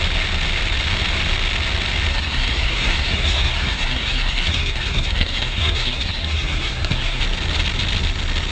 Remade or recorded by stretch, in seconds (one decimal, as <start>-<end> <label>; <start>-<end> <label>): 0.0-2.1 recorded; 2.1-7.2 remade; 7.2-8.5 recorded